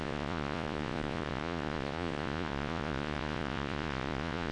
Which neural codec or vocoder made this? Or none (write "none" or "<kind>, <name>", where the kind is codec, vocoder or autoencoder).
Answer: vocoder, Vocos